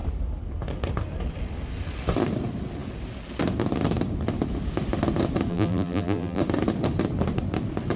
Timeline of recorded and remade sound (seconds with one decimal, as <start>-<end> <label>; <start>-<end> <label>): 0.0-5.5 recorded; 5.5-6.4 remade; 6.4-8.0 recorded